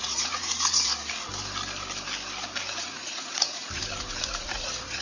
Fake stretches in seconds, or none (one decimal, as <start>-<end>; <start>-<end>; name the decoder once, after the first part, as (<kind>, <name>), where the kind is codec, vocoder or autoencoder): 0.0-0.9 (vocoder, Vocos); 2.7-3.8; 4.4-5.0